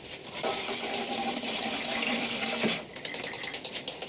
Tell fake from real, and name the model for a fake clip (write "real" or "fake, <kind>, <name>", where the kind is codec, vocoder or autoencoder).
fake, vocoder, BigVGAN v2